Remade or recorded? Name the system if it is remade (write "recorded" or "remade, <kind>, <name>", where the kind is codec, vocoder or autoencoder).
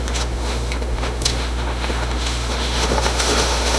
remade, autoencoder, DAC-VAE